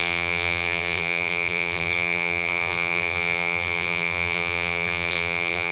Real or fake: fake